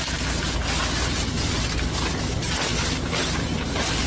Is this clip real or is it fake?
real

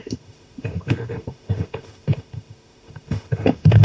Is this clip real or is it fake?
fake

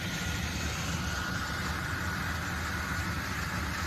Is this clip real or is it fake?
real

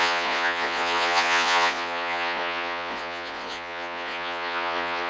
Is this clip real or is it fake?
fake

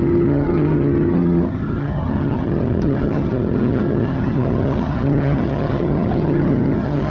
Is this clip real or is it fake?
fake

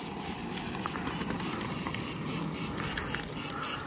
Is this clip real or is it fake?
real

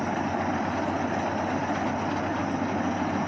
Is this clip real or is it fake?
real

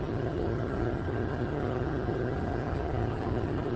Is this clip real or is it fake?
fake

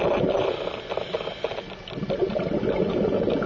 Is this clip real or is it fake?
real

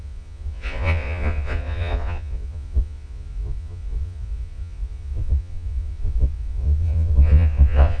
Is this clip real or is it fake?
fake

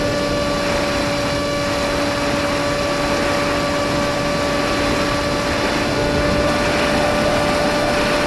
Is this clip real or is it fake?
real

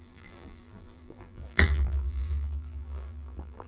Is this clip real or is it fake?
fake